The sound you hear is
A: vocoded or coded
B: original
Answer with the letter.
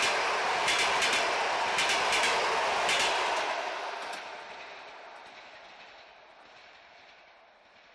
B